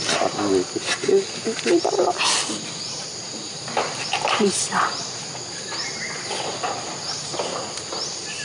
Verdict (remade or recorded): recorded